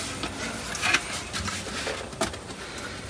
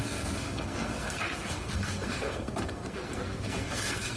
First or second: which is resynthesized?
second